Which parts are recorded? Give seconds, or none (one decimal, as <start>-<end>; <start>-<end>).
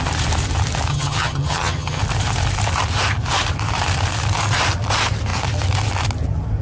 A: 0.0-0.9; 2.0-6.6